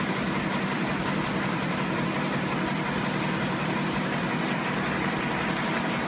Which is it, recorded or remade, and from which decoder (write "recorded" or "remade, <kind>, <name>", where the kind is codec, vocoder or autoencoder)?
recorded